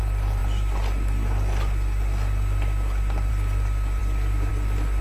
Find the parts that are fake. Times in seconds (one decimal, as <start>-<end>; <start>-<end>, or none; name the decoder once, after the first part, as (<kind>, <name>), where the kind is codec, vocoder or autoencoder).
none